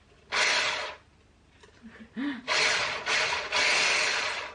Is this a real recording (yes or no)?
yes